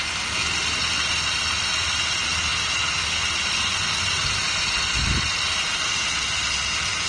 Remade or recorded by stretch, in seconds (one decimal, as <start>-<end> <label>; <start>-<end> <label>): 0.0-7.1 recorded